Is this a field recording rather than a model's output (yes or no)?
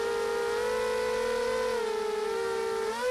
yes